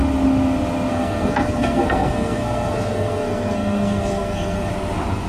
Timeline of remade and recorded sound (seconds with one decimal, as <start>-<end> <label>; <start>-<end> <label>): 0.0-0.9 recorded; 0.9-4.7 remade; 4.7-5.3 recorded